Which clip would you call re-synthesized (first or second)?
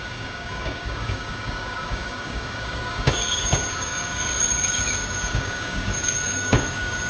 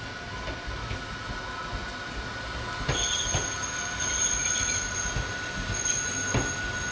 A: first